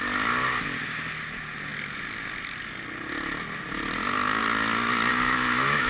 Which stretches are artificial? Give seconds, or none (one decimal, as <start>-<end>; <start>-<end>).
5.1-5.9